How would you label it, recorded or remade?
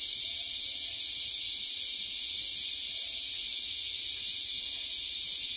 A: recorded